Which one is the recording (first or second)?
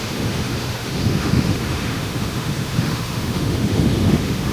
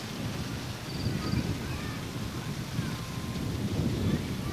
second